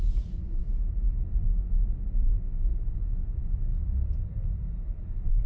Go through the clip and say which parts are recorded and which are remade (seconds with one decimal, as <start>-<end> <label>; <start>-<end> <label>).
0.0-0.6 remade; 0.6-3.4 recorded; 3.4-5.5 remade